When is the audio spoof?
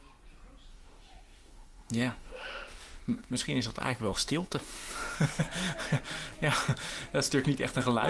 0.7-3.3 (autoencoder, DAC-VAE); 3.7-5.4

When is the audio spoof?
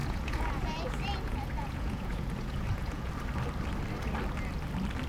0.0-3.1 (vocoder, Vocos)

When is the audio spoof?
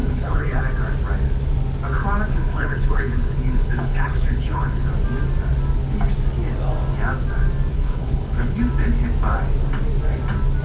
0.0-0.6 (codec, HILCodec); 2.3-4.9; 7.7-8.6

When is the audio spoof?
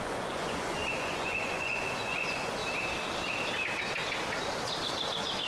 0.0-2.6 (vocoder, Vocos)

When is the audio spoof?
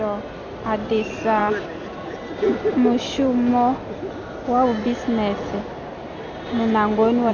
none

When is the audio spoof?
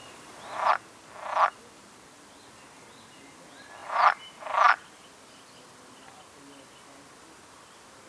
0.0-0.7 (vocoder, BigVGAN v2); 3.8-4.7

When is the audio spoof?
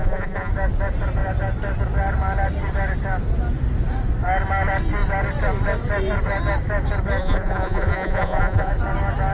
0.0-0.5 (vocoder, Vocos); 7.2-8.7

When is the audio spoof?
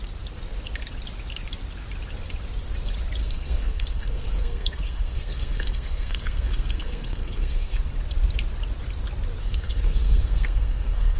3.2-7.8 (codec, SNAC); 9.4-11.2